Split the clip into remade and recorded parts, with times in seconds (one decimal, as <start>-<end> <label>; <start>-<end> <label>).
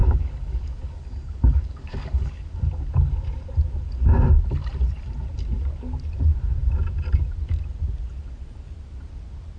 0.0-2.4 remade; 2.4-9.6 recorded